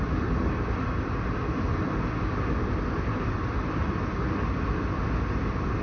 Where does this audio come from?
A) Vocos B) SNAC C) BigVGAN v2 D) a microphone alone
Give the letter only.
D